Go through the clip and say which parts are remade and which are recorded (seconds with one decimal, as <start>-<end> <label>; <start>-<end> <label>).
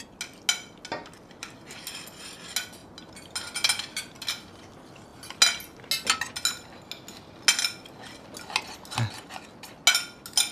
0.0-10.5 recorded